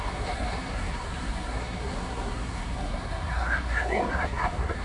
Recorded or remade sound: remade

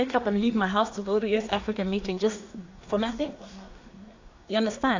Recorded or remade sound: remade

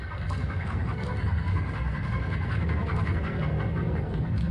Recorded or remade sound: remade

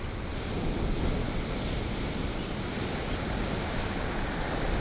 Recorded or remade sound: recorded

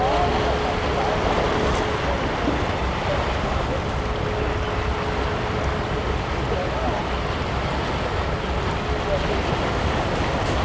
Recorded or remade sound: recorded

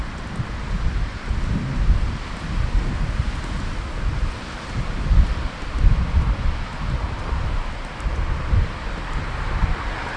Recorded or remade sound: recorded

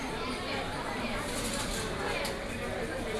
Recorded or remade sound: recorded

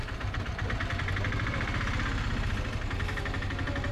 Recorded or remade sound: recorded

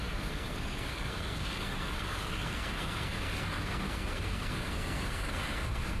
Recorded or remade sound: remade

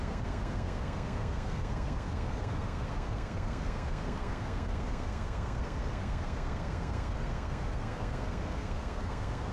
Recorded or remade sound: remade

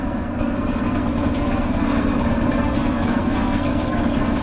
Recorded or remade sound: remade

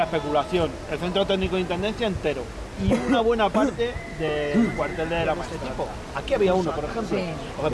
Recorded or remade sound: recorded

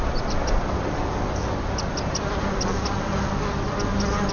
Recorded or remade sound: recorded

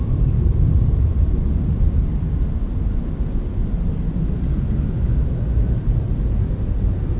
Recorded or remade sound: recorded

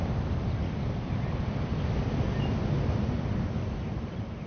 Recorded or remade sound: recorded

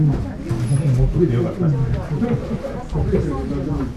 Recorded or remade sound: recorded